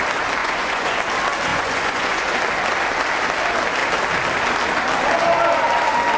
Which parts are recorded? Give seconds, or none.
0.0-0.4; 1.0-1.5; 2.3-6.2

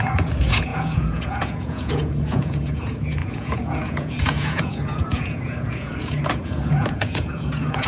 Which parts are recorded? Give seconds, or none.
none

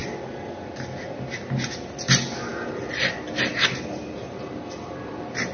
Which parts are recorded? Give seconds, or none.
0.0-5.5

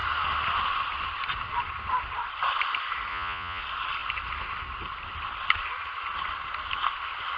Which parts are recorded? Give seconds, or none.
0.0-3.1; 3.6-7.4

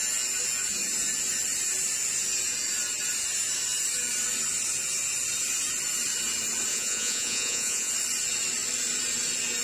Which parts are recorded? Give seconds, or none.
0.0-6.7; 7.9-9.6

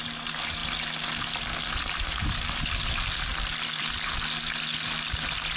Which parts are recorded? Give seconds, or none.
0.0-5.6

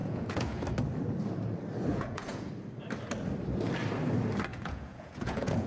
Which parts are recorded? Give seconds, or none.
0.6-1.9; 2.5-4.5